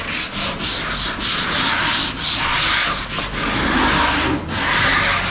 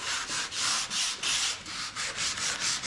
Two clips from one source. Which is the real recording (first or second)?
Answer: first